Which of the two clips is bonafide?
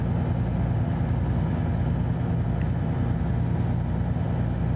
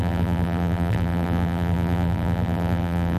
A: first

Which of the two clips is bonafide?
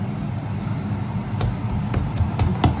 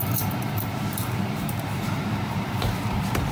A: first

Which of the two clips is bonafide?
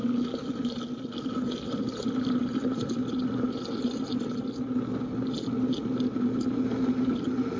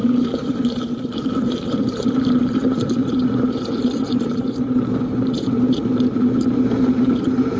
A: first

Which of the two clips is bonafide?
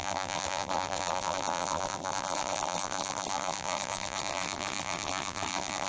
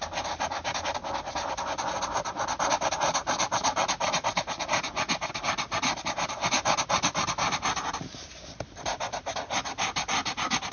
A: second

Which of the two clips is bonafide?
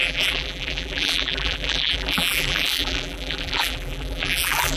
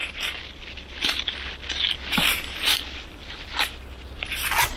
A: second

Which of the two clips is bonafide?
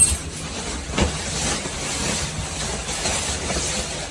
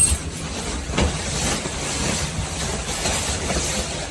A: first